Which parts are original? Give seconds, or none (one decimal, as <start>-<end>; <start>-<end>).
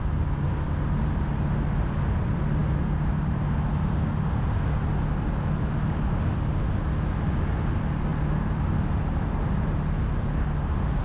0.0-11.0